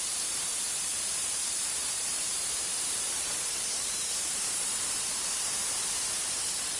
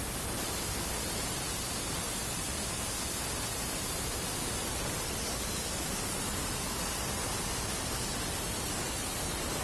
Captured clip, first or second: second